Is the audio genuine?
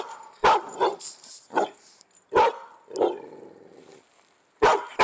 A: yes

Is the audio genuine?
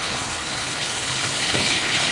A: no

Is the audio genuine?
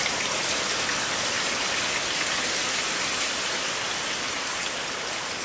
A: yes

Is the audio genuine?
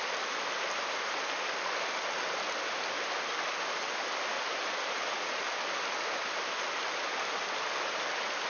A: yes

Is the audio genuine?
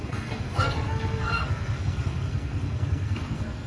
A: no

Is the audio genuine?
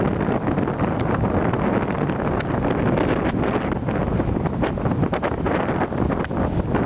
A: yes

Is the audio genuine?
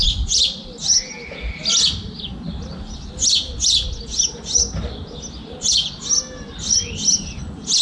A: yes